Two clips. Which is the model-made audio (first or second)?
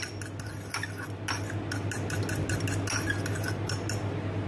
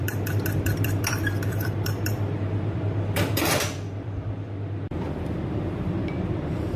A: second